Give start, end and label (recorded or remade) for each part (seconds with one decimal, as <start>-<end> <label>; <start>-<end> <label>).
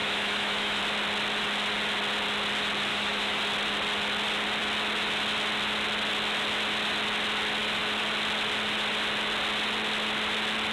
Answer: 0.0-0.8 remade; 0.8-2.9 recorded; 2.9-3.4 remade; 3.4-10.7 recorded